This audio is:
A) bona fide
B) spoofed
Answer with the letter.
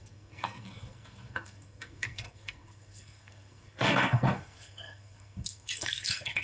B